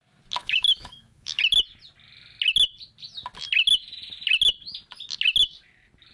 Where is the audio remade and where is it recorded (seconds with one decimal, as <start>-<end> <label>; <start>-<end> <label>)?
0.0-0.4 recorded; 0.4-1.4 remade; 1.4-6.1 recorded